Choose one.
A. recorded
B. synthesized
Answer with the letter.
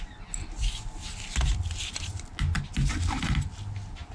A